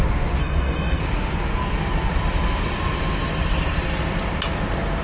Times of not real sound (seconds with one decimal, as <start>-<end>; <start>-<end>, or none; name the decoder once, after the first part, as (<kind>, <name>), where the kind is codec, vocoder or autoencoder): 0.4-1.0 (codec, SNAC)

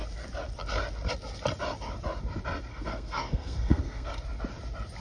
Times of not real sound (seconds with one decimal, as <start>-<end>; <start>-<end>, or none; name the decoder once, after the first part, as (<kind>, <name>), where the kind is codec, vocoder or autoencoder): 2.7-4.1 (codec, SNAC)

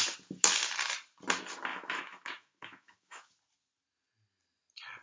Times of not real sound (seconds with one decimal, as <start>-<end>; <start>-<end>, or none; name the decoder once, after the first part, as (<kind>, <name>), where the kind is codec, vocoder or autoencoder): 1.7-3.3 (autoencoder, DAC-VAE)

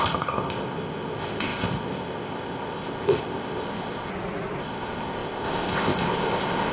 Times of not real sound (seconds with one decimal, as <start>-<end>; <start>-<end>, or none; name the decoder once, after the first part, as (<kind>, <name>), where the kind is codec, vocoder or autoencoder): 0.0-4.1 (codec, ZipCodec); 4.6-6.7

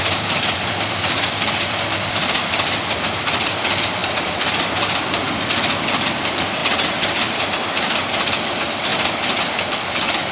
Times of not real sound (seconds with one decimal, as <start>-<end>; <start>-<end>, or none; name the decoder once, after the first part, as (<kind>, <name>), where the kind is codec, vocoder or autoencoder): 0.0-10.3 (vocoder, BigVGAN v2)

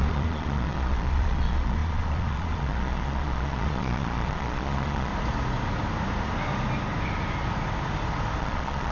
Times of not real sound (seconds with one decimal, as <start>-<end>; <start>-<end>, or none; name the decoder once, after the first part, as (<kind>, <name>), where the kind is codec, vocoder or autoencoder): 0.0-5.1 (vocoder, Vocos); 8.4-8.9

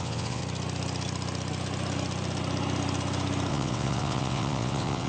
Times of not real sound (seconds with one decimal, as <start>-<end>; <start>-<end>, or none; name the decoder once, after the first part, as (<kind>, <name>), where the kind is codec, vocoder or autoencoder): 0.0-0.4 (vocoder, WaveNeXt); 3.5-5.1

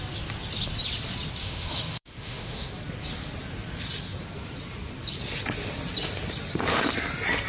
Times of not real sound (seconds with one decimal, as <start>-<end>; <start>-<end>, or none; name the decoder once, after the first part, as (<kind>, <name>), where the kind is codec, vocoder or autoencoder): 1.4-2.7 (autoencoder, DAC-VAE)